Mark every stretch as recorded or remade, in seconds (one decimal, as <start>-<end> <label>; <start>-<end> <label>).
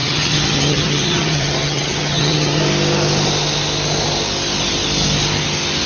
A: 0.0-2.6 remade; 2.6-5.9 recorded